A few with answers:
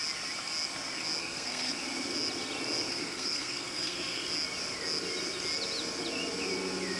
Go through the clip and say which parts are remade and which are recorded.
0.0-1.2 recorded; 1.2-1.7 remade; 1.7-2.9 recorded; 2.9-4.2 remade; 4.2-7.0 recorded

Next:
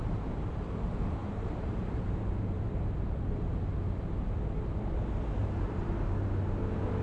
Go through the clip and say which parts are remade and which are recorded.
0.0-1.2 recorded; 1.2-3.5 remade; 3.5-5.4 recorded; 5.4-5.9 remade; 5.9-7.0 recorded